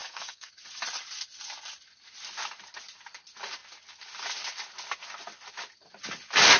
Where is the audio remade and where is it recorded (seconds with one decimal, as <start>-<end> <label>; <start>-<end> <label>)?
0.0-0.5 remade; 0.5-6.6 recorded